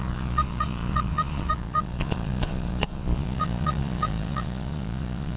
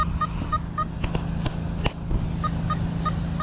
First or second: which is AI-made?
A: first